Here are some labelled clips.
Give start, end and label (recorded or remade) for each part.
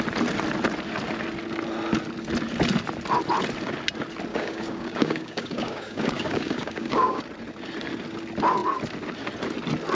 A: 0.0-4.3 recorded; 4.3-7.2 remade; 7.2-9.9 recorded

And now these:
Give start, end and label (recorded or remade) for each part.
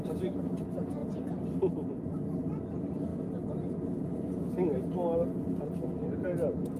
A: 0.0-6.8 recorded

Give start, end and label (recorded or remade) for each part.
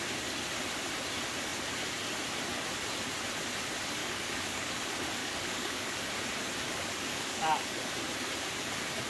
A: 0.0-4.0 recorded; 4.0-4.7 remade; 4.7-5.2 recorded; 5.2-6.0 remade; 6.0-6.7 recorded; 6.7-7.9 remade; 7.9-9.1 recorded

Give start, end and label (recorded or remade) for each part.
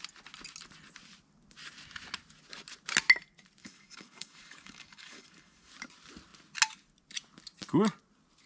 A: 0.0-3.6 recorded; 3.6-5.7 remade; 5.7-8.5 recorded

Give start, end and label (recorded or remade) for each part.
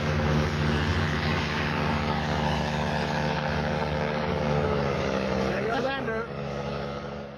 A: 0.0-7.4 remade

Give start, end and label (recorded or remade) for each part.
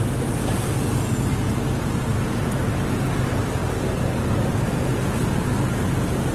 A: 0.0-6.3 recorded